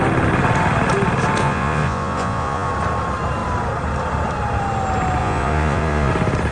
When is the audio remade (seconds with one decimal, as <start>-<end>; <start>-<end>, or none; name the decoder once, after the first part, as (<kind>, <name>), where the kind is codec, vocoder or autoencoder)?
1.4-2.7 (vocoder, Vocos); 5.2-6.1